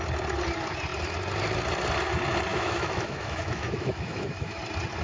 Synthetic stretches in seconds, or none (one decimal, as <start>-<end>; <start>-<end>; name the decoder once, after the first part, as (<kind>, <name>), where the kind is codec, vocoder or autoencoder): 2.5-4.6 (autoencoder, DAC-VAE)